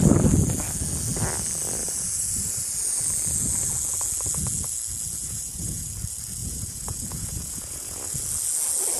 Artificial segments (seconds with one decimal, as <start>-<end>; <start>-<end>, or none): 1.8-3.0; 5.2-5.9; 6.4-8.1